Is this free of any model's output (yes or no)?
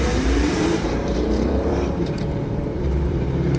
no